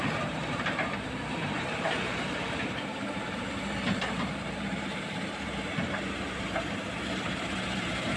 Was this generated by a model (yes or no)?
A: yes